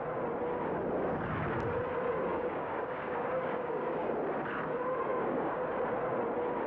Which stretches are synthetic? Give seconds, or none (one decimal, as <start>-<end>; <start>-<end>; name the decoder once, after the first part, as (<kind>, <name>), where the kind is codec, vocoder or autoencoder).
2.3-4.1 (codec, DAC); 5.1-5.6